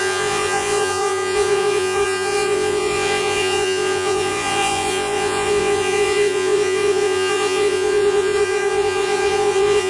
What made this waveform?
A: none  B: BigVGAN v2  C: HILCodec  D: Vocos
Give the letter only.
D